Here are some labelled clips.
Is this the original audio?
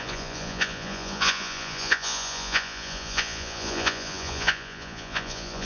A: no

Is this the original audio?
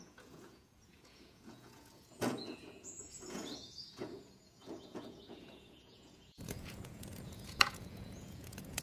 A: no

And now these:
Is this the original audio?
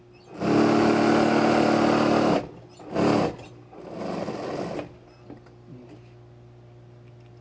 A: yes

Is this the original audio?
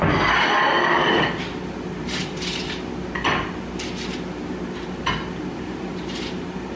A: yes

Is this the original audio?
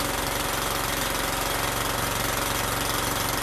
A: yes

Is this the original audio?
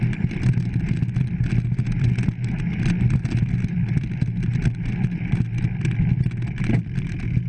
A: yes